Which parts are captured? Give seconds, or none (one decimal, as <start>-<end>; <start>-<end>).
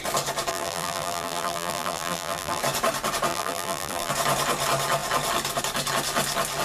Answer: 0.0-0.5; 2.6-3.3; 4.1-6.6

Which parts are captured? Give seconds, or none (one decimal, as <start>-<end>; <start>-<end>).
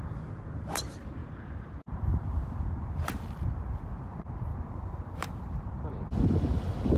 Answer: 0.0-4.5; 5.6-7.0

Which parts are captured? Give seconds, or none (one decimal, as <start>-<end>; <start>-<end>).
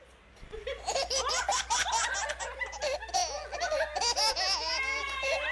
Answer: 0.0-0.7; 1.6-5.5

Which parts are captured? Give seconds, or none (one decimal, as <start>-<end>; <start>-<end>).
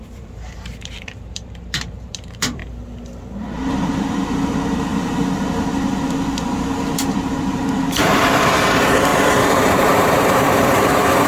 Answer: 2.6-3.7; 4.9-7.1